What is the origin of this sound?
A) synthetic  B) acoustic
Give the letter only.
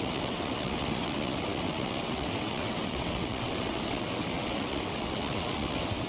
A